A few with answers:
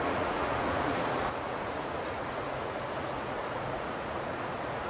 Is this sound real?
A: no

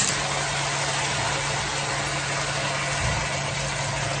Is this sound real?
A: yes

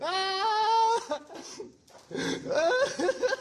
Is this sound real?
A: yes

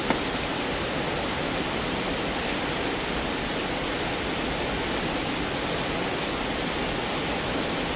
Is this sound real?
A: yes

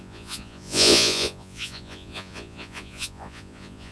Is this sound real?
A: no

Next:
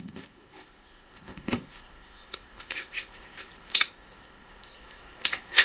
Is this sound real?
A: no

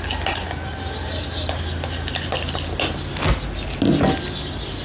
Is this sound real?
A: yes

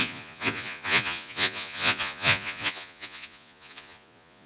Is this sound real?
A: no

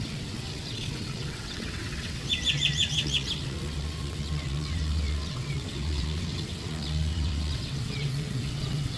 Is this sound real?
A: no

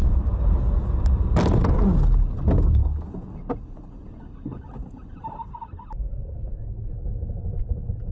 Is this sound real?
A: yes